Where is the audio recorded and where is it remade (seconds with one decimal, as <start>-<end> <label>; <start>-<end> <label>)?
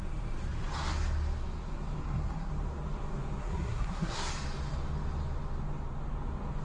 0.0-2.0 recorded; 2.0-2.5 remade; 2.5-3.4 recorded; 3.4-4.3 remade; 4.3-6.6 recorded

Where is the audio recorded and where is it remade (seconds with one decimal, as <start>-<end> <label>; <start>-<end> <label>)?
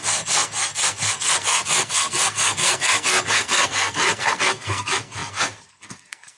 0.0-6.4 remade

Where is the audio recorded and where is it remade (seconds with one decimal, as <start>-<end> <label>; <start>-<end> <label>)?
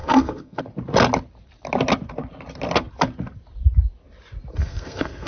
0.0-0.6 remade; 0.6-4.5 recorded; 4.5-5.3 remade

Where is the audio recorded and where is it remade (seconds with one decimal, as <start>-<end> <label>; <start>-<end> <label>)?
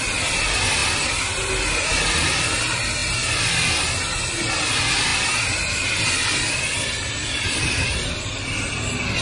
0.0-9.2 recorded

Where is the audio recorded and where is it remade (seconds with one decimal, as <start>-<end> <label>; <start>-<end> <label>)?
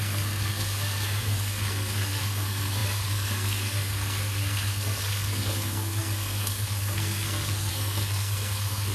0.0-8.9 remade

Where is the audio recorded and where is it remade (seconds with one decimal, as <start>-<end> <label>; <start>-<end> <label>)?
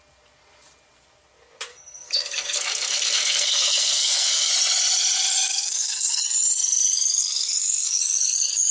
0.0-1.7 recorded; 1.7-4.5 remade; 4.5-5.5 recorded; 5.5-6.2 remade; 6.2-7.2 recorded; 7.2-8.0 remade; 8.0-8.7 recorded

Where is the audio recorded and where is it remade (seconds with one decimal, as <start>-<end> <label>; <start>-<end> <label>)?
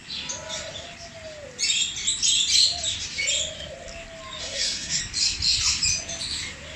0.0-4.4 recorded; 4.4-5.0 remade; 5.0-6.8 recorded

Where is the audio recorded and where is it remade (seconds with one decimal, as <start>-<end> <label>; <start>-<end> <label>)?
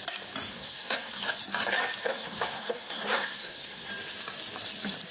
0.0-0.5 recorded; 0.5-1.2 remade; 1.2-2.0 recorded; 2.0-3.9 remade; 3.9-5.1 recorded